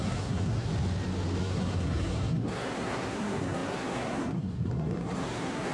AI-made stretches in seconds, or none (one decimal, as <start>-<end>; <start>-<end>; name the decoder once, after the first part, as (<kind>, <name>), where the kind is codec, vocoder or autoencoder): 0.0-0.7 (codec, SNAC); 1.4-5.7

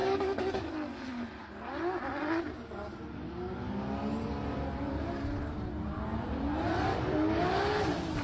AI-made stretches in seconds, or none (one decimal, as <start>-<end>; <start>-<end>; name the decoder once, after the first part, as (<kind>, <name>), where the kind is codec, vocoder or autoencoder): 0.0-0.7 (codec, DAC); 6.9-7.4

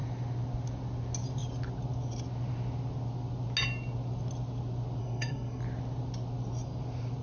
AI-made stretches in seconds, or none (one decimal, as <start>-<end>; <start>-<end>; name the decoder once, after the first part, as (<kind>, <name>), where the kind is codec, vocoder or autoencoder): 5.0-5.6 (codec, SNAC)

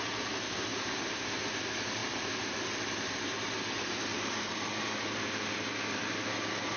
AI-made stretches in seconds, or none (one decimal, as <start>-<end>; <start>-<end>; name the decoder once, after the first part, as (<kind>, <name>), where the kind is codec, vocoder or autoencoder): 2.0-2.8 (vocoder, BigVGAN v2); 4.1-4.7

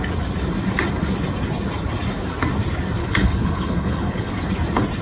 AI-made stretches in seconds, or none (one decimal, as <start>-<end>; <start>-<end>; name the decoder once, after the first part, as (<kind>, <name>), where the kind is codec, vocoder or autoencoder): 3.0-4.3 (codec, HILCodec)